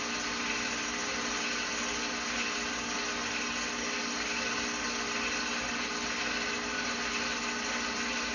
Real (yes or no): yes